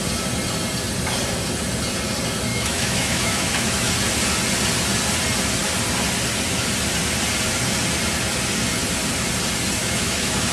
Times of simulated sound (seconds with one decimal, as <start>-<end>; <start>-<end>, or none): 2.5-3.9; 9.8-10.5